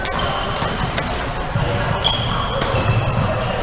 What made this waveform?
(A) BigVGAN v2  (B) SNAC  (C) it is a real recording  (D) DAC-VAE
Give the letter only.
C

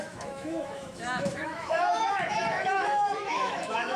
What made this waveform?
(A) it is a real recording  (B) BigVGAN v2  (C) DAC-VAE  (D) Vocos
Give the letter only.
C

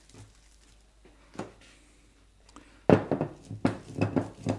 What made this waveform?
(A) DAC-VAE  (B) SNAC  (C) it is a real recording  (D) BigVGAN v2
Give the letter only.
C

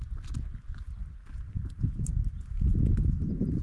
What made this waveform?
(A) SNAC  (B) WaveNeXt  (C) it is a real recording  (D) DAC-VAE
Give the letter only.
C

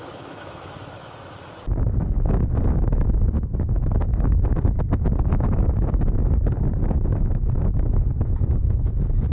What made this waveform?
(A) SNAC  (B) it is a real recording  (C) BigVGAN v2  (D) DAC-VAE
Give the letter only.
D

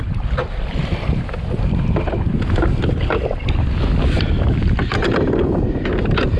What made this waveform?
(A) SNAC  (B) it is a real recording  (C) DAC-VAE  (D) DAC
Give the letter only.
B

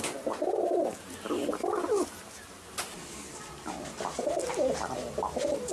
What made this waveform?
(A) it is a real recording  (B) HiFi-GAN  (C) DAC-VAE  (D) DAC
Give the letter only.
A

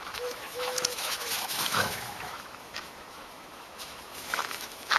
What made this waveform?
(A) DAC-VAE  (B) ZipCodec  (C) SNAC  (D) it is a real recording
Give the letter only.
A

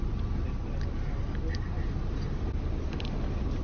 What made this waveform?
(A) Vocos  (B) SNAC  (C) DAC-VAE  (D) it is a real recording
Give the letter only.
D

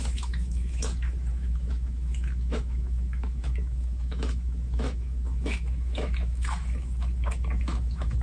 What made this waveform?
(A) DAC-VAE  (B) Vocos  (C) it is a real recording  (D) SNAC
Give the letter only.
A